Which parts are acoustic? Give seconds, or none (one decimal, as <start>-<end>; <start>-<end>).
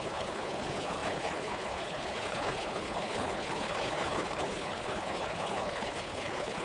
none